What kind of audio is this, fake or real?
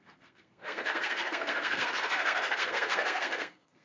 fake